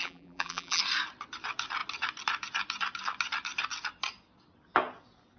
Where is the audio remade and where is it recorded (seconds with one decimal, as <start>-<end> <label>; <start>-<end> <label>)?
0.0-0.8 remade; 0.8-5.4 recorded